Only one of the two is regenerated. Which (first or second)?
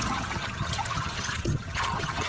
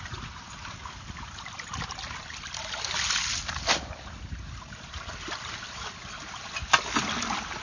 first